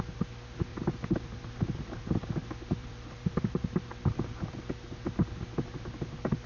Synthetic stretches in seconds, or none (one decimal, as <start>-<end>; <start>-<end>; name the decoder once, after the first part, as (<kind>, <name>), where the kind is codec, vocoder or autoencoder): 0.7-4.6 (vocoder, BigVGAN v2)